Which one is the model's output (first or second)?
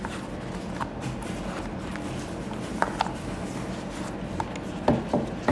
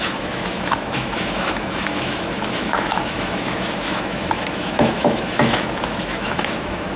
second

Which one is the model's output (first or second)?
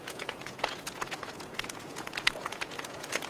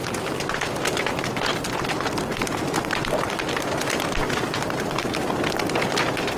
first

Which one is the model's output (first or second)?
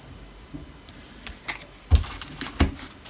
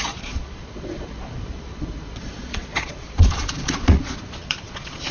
second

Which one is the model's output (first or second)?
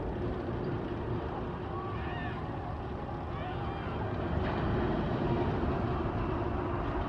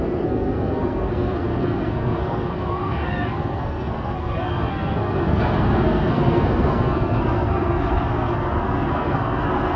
second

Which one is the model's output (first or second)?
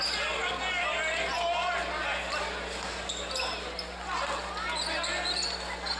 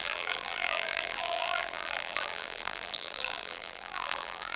second